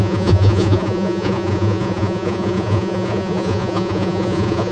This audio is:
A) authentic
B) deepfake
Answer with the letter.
B